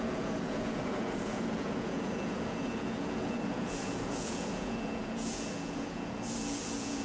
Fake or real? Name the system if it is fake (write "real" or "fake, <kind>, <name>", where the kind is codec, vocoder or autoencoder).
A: fake, vocoder, Vocos